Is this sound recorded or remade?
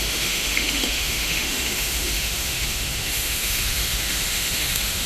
remade